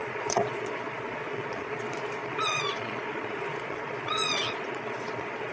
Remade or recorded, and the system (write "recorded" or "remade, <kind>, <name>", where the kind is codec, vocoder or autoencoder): remade, vocoder, Vocos